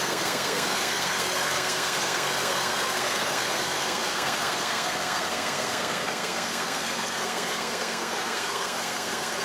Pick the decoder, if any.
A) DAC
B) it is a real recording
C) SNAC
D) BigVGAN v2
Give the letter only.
C